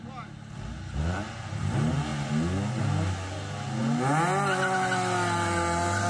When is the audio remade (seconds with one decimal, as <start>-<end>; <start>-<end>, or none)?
none